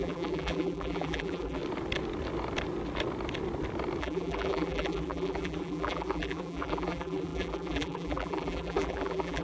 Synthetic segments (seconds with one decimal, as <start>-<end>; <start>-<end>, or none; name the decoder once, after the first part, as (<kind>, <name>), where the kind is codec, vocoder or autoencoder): 0.0-1.6 (vocoder, BigVGAN v2); 4.0-9.4